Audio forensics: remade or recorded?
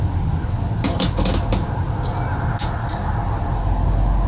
recorded